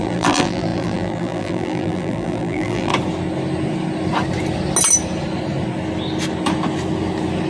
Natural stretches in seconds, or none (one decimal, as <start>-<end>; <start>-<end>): 2.9-7.5